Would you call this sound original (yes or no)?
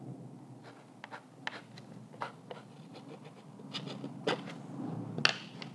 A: yes